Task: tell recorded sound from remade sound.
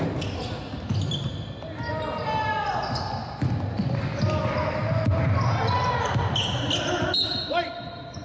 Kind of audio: recorded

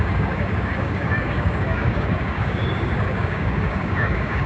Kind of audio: remade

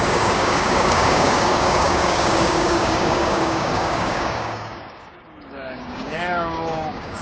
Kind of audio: remade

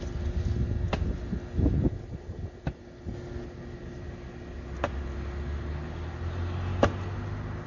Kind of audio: recorded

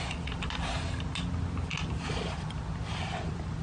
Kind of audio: recorded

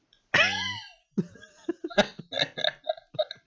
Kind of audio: recorded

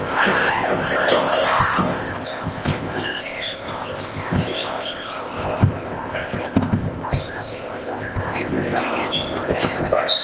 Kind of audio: remade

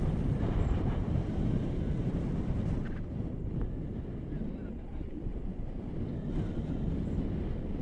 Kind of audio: recorded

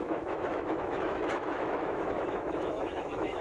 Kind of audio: remade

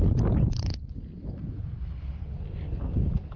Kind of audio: recorded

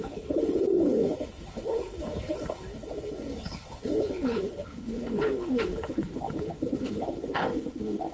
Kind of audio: remade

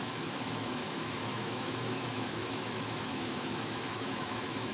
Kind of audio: remade